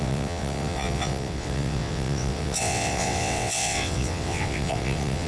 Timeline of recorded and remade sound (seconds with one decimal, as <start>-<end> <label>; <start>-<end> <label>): 0.0-5.3 remade